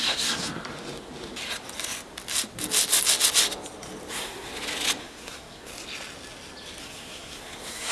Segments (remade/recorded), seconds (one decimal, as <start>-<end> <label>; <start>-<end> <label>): 0.0-0.5 remade; 0.5-4.1 recorded; 4.1-4.5 remade; 4.5-5.0 recorded; 5.0-5.7 remade; 5.7-6.8 recorded; 6.8-7.9 remade